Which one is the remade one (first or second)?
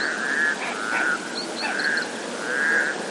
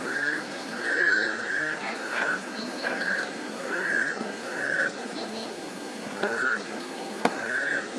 second